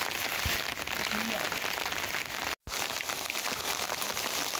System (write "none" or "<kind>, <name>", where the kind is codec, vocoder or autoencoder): none